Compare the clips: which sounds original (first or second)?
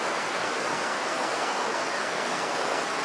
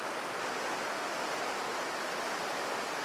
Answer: second